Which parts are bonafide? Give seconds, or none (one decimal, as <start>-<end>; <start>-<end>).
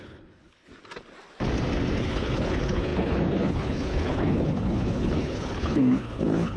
0.7-2.0